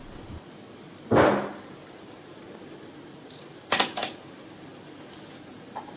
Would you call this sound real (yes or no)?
yes